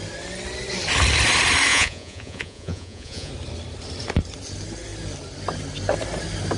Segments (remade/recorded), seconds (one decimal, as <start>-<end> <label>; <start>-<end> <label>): 0.0-1.7 recorded; 1.7-3.3 remade; 3.3-6.6 recorded